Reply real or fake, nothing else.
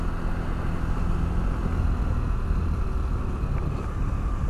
real